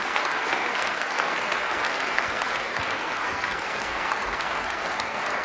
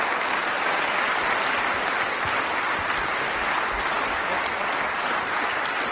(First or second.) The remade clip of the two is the first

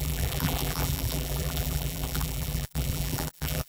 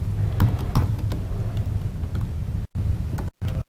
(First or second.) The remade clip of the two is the first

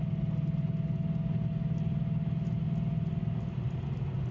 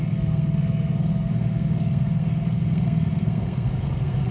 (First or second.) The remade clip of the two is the second